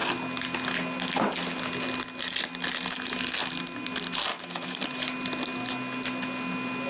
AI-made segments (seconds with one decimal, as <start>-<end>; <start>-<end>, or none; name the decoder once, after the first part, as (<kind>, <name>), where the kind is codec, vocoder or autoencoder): 4.3-4.8 (autoencoder, DAC-VAE)